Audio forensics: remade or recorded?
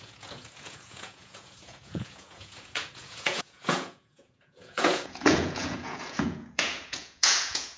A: remade